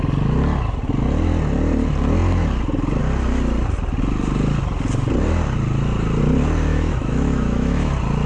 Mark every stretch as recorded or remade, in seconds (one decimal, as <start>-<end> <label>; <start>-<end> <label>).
0.0-6.7 recorded; 6.7-7.9 remade; 7.9-8.3 recorded